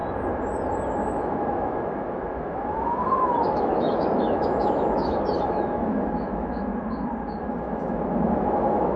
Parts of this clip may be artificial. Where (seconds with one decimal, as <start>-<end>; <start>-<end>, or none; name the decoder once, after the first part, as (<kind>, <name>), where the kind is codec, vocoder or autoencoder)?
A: 1.0-6.7 (autoencoder, DAC-VAE); 7.6-9.0